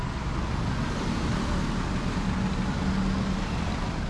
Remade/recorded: recorded